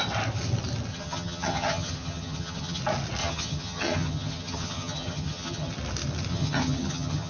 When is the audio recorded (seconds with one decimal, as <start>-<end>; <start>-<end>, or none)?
0.0-0.9; 2.8-3.2; 5.7-6.3